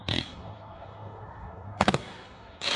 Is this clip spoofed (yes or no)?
yes